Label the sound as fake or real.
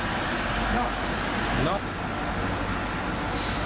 real